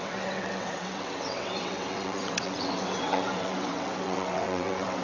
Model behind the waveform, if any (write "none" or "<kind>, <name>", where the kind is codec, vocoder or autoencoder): vocoder, WaveNeXt